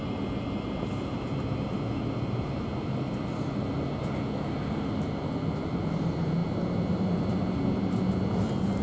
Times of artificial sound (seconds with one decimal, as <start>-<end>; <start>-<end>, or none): none